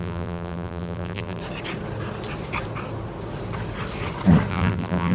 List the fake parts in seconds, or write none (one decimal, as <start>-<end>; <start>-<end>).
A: 0.0-1.4; 4.5-5.1